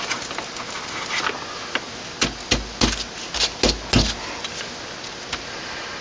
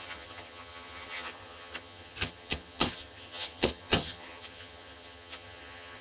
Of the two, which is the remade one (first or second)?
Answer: second